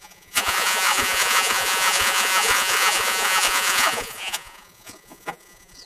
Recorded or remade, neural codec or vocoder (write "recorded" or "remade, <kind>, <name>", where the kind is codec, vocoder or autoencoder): remade, vocoder, Vocos